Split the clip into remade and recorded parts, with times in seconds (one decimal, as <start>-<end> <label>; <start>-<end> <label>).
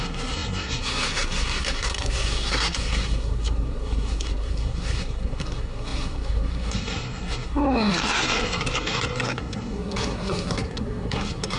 0.0-11.6 remade